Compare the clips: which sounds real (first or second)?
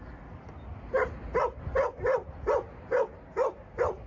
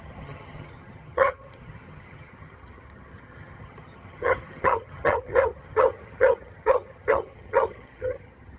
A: first